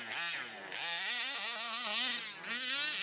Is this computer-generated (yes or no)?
no